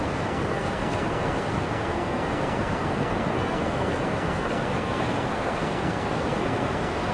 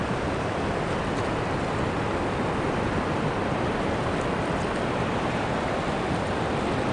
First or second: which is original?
second